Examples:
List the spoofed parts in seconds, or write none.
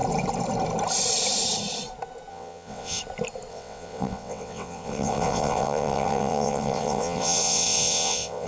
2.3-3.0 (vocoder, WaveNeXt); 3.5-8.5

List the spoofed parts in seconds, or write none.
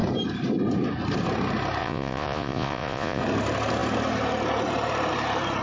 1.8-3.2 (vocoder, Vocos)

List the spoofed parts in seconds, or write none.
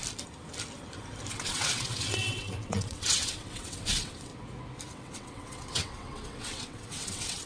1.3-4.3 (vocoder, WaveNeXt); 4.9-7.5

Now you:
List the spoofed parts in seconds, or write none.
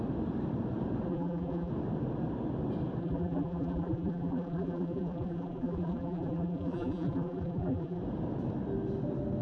1.1-1.7 (vocoder, BigVGAN v2); 3.0-8.0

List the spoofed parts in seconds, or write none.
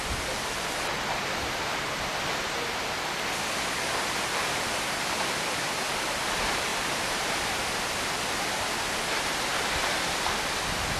6.7-7.4 (vocoder, BigVGAN v2)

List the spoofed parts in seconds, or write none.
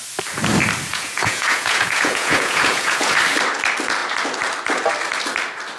0.9-3.2 (vocoder, Vocos)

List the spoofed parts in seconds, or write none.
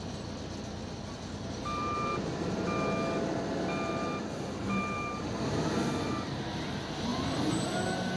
7.1-7.7 (vocoder, BigVGAN v2)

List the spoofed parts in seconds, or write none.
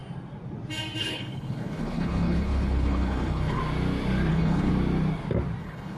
1.0-3.6 (codec, HILCodec); 4.3-4.7; 5.6-6.0